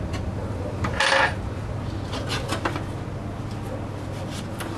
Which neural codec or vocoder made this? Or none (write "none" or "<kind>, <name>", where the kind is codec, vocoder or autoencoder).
none